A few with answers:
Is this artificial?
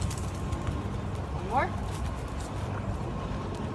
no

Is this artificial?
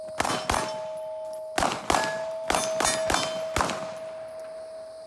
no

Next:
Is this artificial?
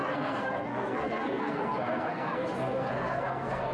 yes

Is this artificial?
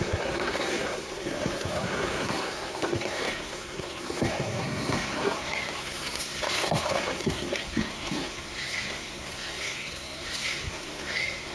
yes